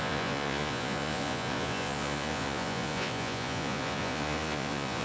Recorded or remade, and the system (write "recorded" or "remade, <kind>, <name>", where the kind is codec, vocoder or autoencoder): remade, vocoder, Vocos